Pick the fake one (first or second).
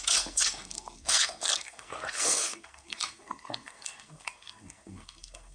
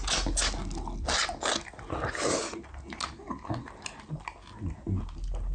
first